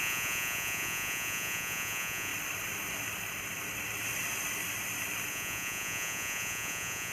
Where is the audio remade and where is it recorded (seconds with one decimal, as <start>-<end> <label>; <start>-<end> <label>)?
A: 0.0-2.3 remade; 2.3-5.3 recorded; 5.3-7.1 remade